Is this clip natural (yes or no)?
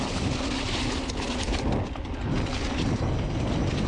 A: yes